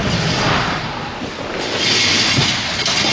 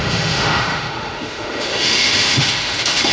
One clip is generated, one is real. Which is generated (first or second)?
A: second